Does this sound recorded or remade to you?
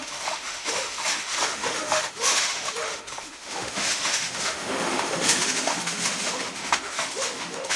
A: remade